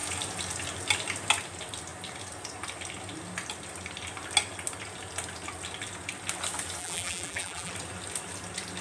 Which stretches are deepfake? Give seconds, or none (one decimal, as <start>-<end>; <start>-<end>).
6.8-7.7

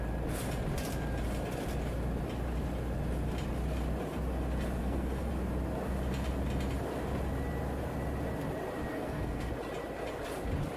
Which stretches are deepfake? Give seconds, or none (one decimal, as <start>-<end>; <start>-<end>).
4.8-5.3; 8.9-9.5

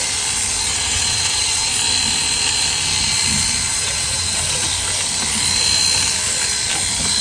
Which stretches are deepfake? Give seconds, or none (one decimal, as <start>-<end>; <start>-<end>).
0.7-1.7; 3.7-4.7

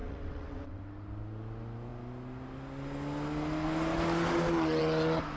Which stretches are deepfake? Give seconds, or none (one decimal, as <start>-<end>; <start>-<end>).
0.0-0.8

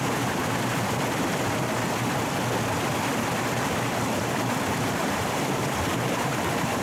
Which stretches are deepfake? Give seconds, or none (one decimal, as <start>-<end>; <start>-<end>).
0.0-0.4; 4.5-6.8

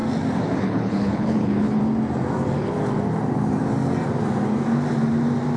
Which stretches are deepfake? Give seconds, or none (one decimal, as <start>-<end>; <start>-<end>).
0.6-1.8

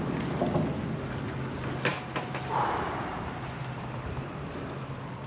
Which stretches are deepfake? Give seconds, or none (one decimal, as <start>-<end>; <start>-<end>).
none

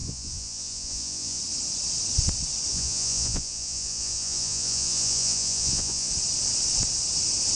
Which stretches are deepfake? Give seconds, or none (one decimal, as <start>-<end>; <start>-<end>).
0.0-1.4; 2.7-6.1